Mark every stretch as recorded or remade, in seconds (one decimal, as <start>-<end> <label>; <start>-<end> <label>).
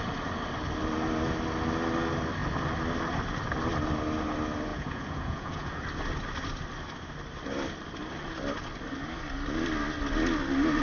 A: 0.0-4.7 recorded; 4.7-5.7 remade; 5.7-10.8 recorded